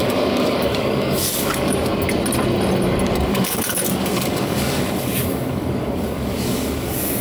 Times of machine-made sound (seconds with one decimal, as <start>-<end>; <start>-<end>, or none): 0.0-1.9; 3.3-7.2